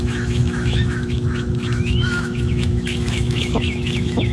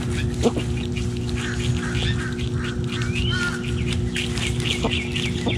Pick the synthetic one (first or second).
first